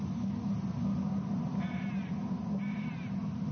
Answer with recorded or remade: recorded